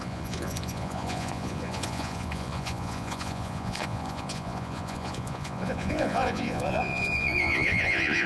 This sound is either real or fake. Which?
fake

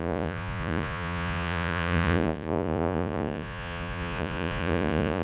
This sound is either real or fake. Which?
fake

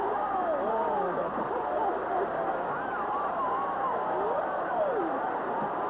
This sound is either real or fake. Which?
real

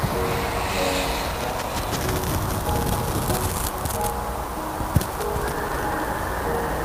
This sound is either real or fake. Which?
real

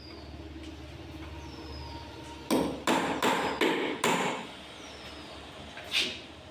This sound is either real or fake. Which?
real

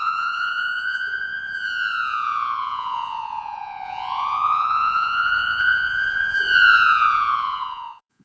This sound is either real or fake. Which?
fake